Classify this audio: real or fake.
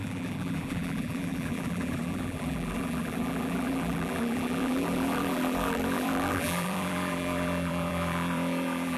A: fake